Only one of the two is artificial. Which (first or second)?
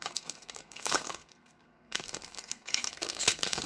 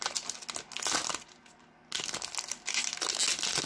first